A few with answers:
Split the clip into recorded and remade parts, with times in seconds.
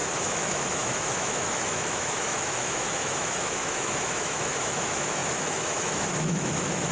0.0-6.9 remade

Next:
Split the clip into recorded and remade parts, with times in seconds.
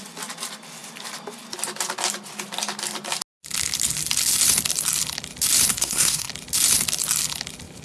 0.0-5.7 recorded; 5.7-6.3 remade; 6.3-7.8 recorded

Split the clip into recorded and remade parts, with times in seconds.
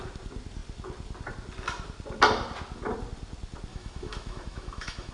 0.0-3.7 recorded; 3.7-5.1 remade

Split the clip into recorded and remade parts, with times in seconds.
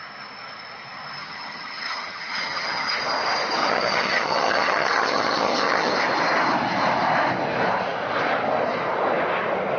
0.0-1.2 recorded; 1.2-2.9 remade; 2.9-3.6 recorded; 3.6-5.9 remade; 5.9-9.8 recorded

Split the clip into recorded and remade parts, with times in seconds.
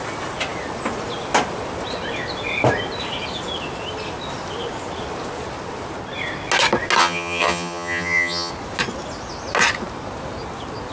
0.0-7.0 recorded; 7.0-8.5 remade; 8.5-10.9 recorded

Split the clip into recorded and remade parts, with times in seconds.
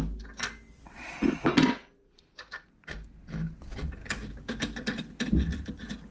0.0-4.0 recorded; 4.0-4.6 remade; 4.6-6.1 recorded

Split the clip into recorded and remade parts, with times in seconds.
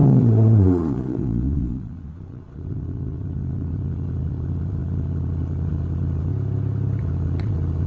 0.0-6.3 remade; 6.3-7.0 recorded; 7.0-7.9 remade